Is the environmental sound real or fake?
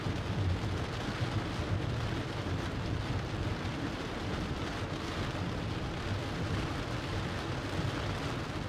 real